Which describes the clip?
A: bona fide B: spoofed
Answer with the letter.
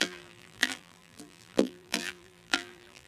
B